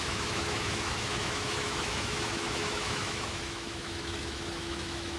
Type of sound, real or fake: fake